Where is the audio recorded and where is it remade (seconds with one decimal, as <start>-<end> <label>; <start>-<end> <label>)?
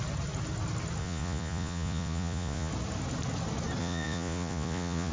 0.0-1.0 recorded; 1.0-2.7 remade; 2.7-3.8 recorded; 3.8-5.1 remade